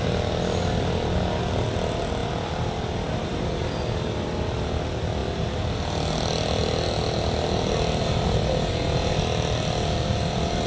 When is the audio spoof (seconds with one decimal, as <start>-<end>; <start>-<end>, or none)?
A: none